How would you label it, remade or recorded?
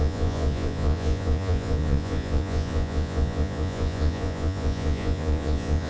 remade